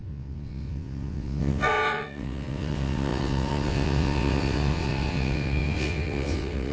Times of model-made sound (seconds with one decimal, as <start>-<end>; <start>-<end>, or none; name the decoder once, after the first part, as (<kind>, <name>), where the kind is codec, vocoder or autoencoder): 0.0-6.7 (vocoder, WaveNeXt)